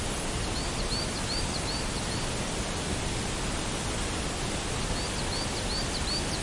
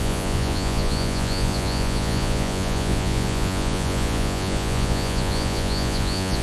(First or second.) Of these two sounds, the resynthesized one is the second